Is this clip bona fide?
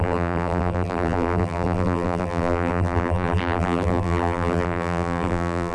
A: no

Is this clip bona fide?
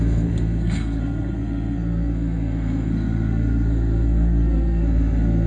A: no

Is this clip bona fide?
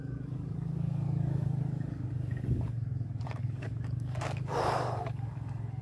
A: no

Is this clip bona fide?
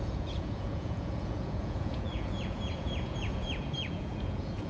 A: no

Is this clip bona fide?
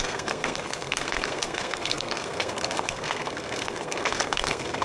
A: no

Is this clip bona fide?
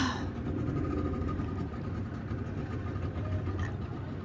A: yes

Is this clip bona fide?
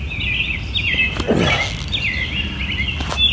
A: yes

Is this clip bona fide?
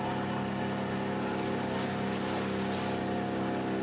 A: yes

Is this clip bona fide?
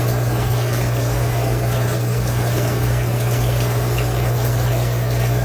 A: no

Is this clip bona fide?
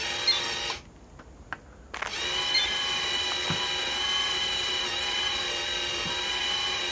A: yes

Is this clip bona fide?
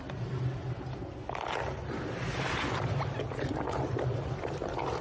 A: yes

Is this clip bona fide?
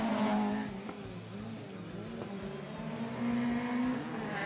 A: yes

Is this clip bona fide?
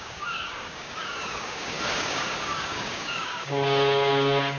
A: no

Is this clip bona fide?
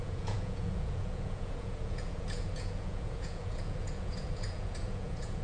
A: no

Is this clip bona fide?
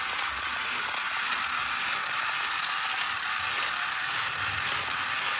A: yes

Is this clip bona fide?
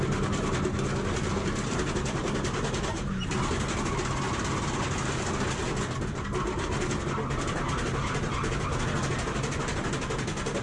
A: yes